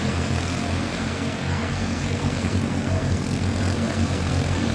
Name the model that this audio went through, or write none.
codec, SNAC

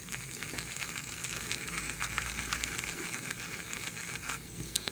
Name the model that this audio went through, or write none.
codec, SNAC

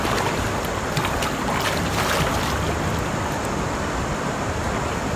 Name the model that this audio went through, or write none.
none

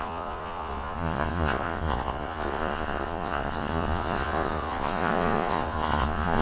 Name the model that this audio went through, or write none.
vocoder, Vocos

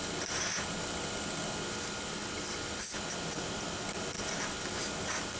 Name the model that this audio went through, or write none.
none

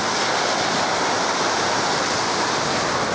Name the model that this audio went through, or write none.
none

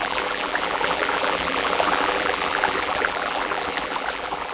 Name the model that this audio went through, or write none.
vocoder, BigVGAN v2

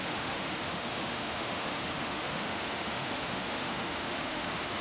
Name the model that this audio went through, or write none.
autoencoder, DAC-VAE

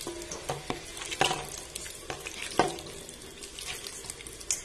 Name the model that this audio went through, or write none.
none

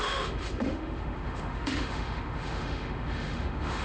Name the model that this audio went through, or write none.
autoencoder, DAC-VAE